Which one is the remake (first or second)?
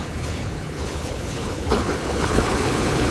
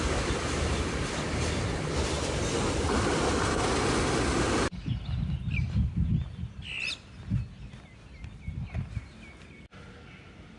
first